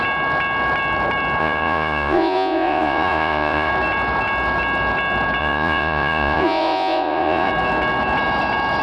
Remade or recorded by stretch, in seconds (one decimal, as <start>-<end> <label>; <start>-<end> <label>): 0.0-1.4 recorded; 1.4-3.7 remade; 3.7-5.4 recorded; 5.4-7.5 remade; 7.5-8.8 recorded